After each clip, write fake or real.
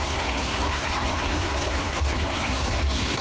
fake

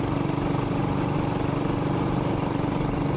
real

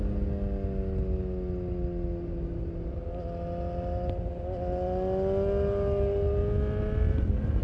real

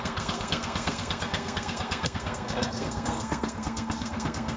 fake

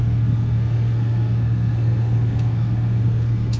fake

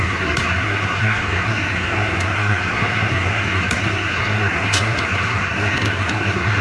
fake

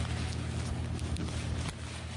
real